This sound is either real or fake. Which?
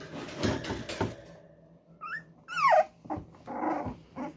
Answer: real